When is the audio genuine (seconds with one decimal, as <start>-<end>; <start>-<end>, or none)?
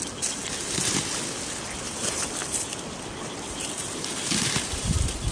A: 0.0-2.4